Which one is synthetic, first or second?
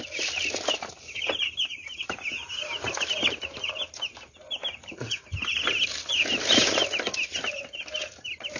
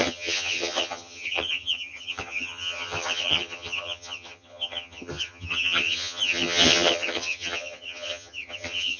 second